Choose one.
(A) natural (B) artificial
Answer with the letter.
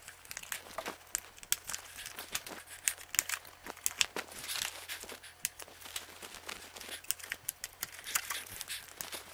A